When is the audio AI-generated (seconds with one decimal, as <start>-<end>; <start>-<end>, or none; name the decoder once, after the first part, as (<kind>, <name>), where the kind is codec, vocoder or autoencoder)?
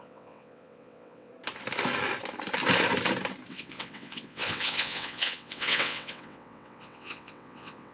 0.0-1.3 (vocoder, WaveNeXt); 3.5-7.9